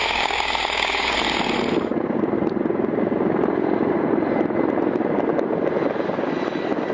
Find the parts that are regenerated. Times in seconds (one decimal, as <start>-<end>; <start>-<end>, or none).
0.0-1.2